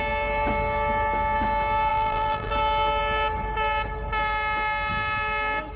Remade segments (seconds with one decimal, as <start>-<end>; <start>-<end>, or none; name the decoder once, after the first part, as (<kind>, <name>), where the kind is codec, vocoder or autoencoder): 1.9-2.5 (vocoder, BigVGAN v2)